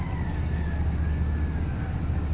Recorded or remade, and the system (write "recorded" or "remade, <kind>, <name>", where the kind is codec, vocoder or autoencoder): recorded